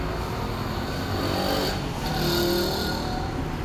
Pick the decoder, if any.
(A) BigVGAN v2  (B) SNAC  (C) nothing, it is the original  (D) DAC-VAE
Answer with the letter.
C